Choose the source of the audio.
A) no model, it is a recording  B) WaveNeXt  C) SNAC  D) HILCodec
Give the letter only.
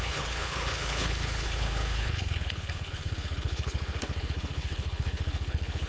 D